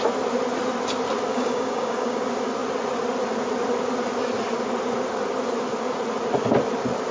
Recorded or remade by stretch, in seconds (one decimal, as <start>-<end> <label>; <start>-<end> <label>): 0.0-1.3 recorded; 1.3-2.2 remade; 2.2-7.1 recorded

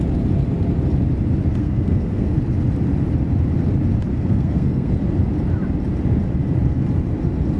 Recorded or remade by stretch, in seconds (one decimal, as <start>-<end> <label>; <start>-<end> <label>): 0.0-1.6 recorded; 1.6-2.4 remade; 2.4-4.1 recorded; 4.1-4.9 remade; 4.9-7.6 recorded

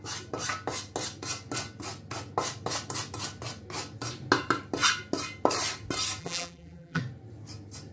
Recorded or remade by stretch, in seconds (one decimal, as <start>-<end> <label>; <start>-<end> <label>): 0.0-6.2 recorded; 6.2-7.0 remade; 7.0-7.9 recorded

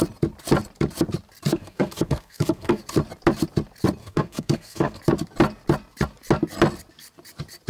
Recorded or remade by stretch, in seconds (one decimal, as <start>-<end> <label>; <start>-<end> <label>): 0.0-1.5 recorded; 1.5-2.8 remade; 2.8-4.0 recorded; 4.0-5.0 remade; 5.0-7.7 recorded

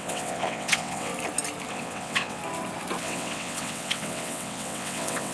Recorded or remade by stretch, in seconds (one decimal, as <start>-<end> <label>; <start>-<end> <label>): 0.0-1.1 remade; 1.1-1.7 recorded; 1.7-2.4 remade; 2.4-3.0 recorded; 3.0-5.3 remade

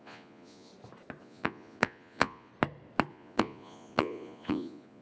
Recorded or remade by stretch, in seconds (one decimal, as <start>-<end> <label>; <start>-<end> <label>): 0.0-0.7 remade; 0.7-1.2 recorded; 1.2-2.5 remade; 2.5-3.1 recorded; 3.1-5.0 remade

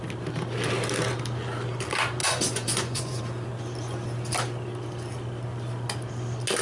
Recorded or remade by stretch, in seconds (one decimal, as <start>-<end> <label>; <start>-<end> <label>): 0.0-2.2 recorded; 2.2-3.2 remade; 3.2-6.6 recorded